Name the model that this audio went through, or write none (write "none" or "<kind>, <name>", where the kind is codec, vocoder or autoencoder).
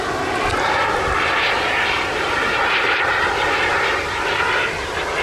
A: vocoder, BigVGAN v2